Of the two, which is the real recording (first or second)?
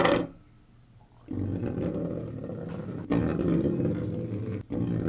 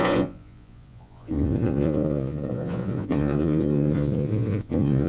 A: first